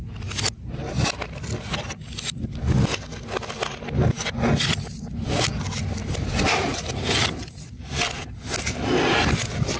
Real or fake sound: real